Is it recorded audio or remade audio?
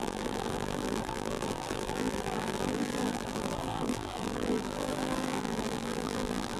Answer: remade